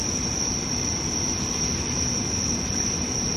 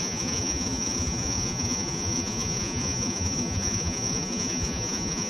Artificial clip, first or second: second